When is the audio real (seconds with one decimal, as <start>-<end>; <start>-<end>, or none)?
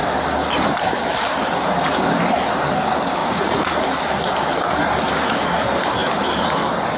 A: 0.0-3.2; 3.7-7.0